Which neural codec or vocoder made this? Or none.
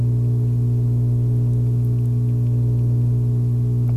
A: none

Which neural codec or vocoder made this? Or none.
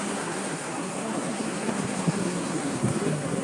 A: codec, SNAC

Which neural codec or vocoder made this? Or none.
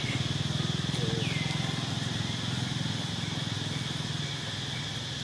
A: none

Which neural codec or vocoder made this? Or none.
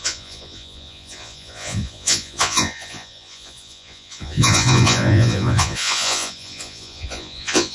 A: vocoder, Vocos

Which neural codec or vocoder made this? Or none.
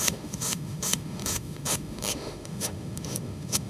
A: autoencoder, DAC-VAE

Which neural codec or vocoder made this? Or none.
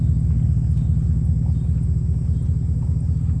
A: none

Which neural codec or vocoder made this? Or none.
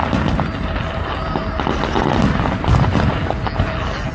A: none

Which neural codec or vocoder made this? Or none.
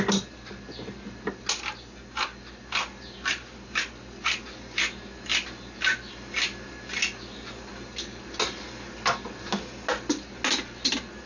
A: none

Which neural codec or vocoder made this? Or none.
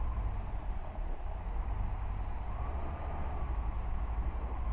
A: none